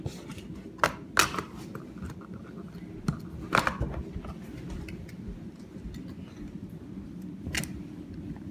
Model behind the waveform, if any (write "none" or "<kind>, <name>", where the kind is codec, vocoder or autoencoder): none